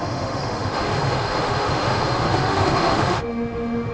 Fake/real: fake